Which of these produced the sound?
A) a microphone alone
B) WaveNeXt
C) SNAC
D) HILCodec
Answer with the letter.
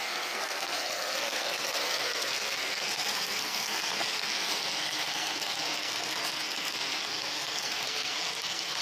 C